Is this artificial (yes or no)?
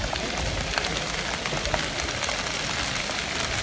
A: no